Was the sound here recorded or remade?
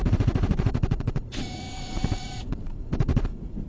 remade